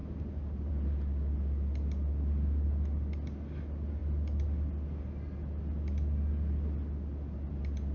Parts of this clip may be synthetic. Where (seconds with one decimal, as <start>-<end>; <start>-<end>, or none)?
none

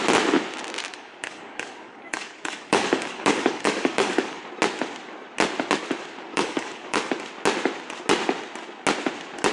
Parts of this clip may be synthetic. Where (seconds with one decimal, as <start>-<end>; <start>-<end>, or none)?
0.9-4.4; 6.3-7.1

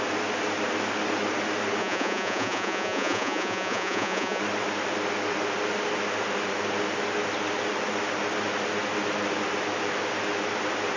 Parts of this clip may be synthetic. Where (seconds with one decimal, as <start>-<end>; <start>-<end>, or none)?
1.8-4.4

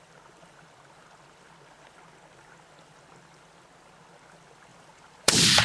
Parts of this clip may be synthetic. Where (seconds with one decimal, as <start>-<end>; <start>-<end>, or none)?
4.7-5.6

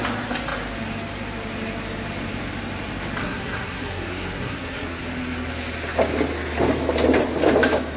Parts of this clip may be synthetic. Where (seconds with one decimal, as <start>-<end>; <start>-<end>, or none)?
3.2-5.0